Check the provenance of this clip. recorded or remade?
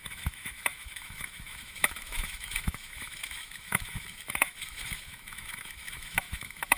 remade